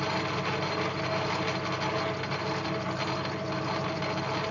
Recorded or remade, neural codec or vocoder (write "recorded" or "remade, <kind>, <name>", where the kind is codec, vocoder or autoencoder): recorded